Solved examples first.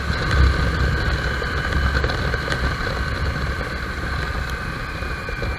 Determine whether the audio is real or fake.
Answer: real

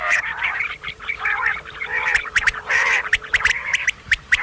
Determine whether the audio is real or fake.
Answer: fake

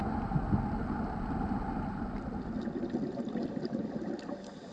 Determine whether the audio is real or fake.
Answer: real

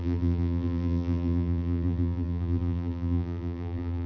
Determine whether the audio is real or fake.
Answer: fake